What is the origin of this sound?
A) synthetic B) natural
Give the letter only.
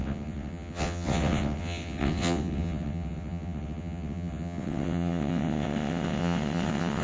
A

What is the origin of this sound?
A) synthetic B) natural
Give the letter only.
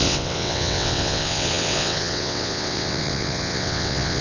A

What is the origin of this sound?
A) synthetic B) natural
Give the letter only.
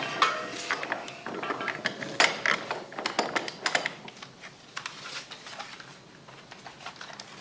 B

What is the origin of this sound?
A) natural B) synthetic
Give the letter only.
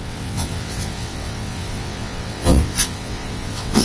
B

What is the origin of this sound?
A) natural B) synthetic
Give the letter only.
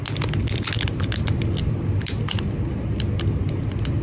A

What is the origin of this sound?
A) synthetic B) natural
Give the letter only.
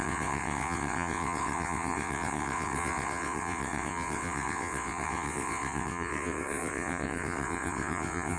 A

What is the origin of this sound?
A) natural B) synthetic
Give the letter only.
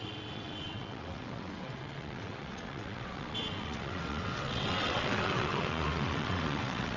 B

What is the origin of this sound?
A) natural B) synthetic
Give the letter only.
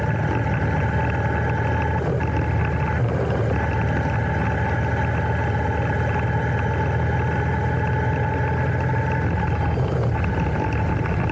A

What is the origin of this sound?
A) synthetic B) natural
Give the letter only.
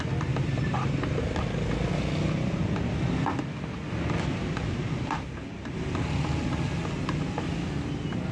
B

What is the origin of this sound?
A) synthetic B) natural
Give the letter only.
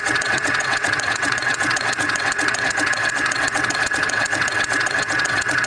A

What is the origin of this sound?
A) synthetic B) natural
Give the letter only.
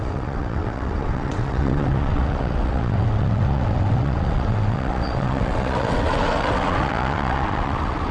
A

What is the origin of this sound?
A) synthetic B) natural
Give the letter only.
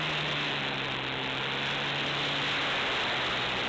B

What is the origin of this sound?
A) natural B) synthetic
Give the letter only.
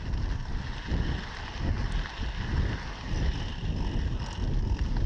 A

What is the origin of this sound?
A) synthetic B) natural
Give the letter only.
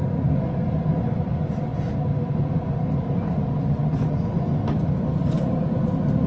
B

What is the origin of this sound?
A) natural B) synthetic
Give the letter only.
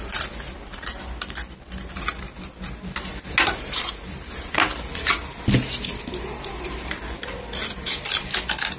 A